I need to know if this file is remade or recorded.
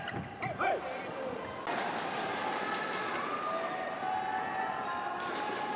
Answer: recorded